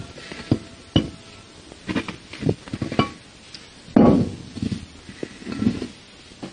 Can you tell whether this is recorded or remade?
recorded